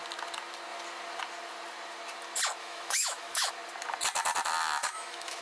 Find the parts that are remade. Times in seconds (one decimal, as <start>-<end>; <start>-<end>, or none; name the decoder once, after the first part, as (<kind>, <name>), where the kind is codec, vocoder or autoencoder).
2.6-3.5 (autoencoder, DAC-VAE); 4.8-5.4